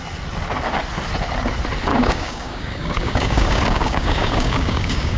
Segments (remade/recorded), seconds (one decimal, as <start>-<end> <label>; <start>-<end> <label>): 0.0-1.9 recorded; 1.9-5.2 remade